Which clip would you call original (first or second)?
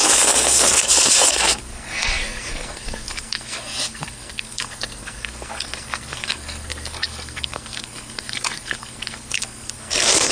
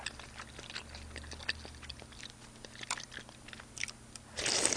second